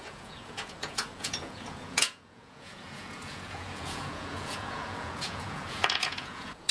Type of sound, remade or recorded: remade